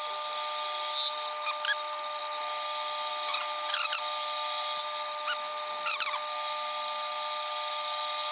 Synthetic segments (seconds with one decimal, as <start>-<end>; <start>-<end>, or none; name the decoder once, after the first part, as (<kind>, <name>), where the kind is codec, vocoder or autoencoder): none